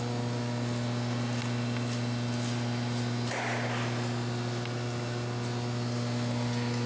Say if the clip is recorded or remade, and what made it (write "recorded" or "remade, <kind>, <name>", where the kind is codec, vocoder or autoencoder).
recorded